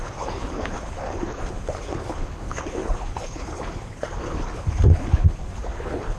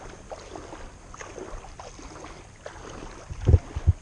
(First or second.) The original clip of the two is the second